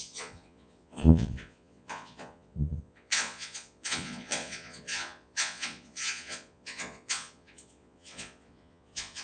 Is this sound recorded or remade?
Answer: remade